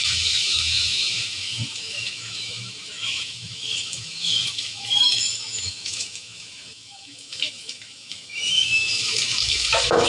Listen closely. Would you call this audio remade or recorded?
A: remade